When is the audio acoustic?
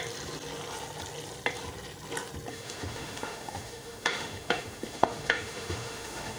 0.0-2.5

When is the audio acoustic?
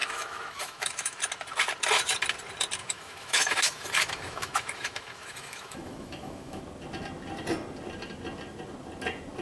1.2-2.8; 6.6-9.4